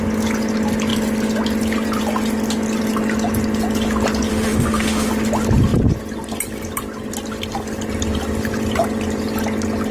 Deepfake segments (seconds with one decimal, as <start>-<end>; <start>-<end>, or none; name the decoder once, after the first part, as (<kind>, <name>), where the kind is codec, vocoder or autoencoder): 4.3-5.1 (autoencoder, DAC-VAE)